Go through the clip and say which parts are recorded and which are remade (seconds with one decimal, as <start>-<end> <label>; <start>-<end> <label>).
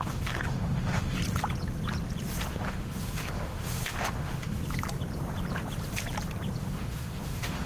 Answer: 0.0-1.2 remade; 1.2-2.5 recorded; 2.5-4.6 remade; 4.6-6.6 recorded; 6.6-7.7 remade